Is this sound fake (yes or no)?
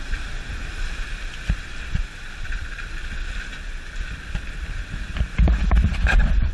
yes